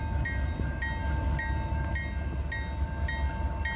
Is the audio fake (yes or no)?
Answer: no